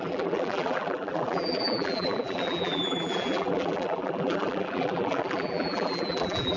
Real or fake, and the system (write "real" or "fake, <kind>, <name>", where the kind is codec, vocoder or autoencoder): fake, vocoder, BigVGAN v2